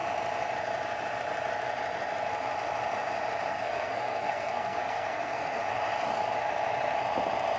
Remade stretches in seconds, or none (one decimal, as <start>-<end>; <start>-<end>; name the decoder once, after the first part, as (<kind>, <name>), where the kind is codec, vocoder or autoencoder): 3.5-5.6 (codec, SNAC)